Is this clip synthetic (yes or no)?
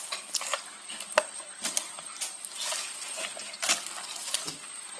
no